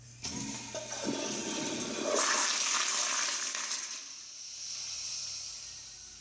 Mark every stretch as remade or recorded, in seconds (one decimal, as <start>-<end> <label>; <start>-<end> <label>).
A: 0.0-6.2 recorded